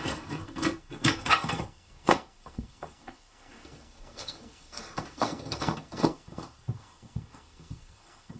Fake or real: fake